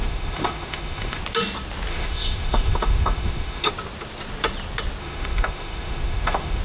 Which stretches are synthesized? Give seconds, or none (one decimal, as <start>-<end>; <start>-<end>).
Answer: 0.0-1.2; 1.9-3.7; 5.0-6.6